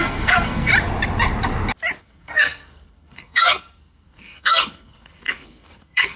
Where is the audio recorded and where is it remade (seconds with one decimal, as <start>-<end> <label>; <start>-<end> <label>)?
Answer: 0.0-0.7 remade; 0.7-2.0 recorded; 2.0-6.2 remade